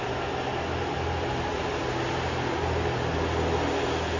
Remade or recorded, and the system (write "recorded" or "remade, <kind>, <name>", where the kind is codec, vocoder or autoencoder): recorded